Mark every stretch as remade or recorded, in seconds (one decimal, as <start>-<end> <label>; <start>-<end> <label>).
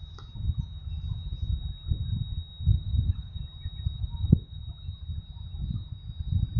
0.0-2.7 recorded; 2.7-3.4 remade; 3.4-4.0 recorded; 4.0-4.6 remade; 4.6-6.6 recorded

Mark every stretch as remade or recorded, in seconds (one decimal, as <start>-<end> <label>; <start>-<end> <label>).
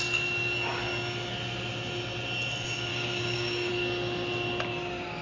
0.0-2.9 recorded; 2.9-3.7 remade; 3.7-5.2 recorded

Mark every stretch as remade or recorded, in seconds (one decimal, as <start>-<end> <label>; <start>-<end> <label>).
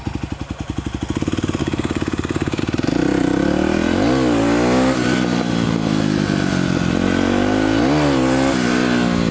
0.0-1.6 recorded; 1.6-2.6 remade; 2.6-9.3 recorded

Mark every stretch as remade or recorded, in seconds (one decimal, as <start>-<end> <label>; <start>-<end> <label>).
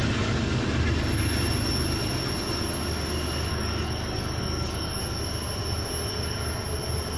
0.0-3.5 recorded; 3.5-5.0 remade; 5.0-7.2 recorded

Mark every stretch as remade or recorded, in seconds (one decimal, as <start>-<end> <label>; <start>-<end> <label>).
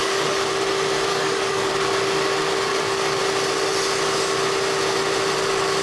0.0-0.5 remade; 0.5-1.1 recorded; 1.1-1.7 remade; 1.7-2.7 recorded; 2.7-3.2 remade; 3.2-5.8 recorded